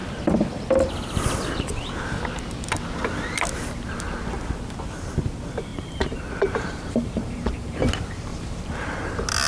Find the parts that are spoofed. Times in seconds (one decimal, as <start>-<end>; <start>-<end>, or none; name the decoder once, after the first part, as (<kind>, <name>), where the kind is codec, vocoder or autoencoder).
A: 5.7-7.9 (vocoder, BigVGAN v2); 8.3-9.1